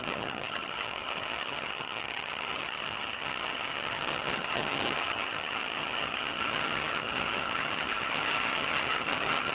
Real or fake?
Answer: fake